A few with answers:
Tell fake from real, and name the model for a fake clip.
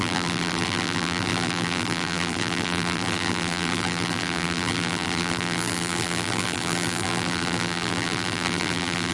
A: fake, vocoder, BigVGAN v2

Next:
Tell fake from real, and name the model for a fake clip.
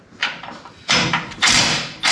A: fake, vocoder, BigVGAN v2